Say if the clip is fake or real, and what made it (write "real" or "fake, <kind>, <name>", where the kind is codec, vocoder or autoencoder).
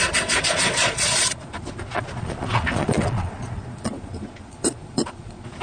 fake, vocoder, Vocos